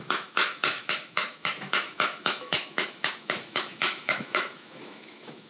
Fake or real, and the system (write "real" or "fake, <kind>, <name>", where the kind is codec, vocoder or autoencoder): fake, autoencoder, DAC-VAE